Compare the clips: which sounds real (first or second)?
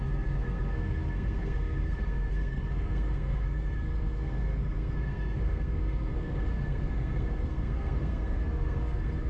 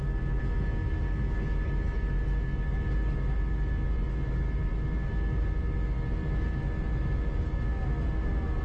second